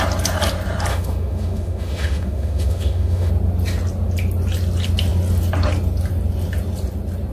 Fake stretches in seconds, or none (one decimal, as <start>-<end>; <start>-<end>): 0.9-3.3